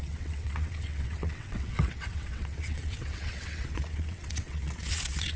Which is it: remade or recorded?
remade